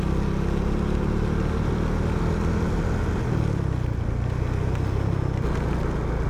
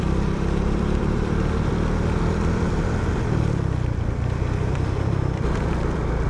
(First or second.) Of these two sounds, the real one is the first